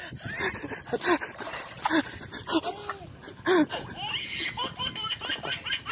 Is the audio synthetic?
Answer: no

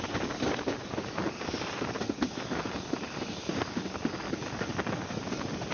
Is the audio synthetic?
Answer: no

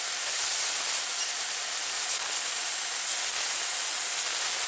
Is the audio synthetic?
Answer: no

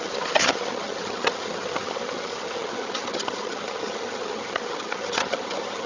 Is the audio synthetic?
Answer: yes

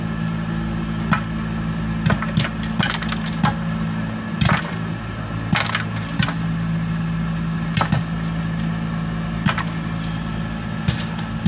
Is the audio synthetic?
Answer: no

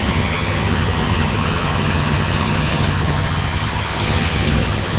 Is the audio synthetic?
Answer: yes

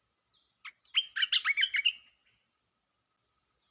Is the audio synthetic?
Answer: no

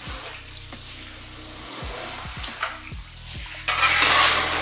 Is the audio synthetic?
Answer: no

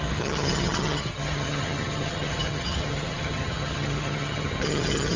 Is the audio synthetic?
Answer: yes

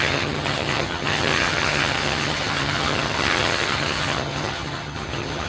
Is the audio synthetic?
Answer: yes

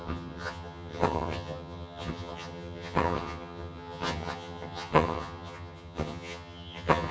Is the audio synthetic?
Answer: yes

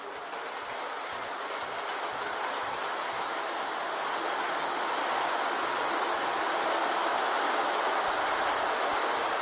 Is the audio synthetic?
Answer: no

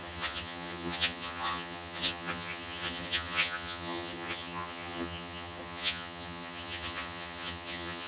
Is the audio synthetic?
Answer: yes